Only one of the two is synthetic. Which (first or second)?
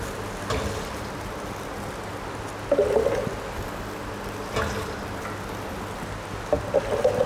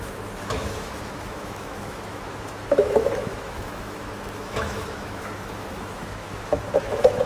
second